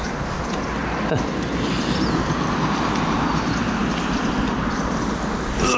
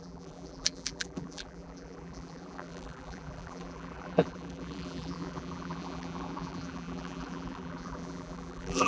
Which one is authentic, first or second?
first